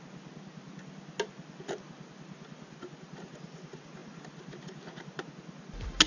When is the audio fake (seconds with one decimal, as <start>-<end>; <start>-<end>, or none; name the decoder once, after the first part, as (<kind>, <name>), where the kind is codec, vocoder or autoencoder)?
none